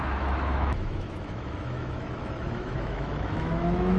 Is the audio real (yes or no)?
no